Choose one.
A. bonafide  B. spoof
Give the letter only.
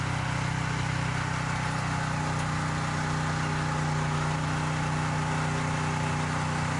A